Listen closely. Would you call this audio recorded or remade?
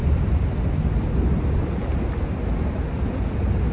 recorded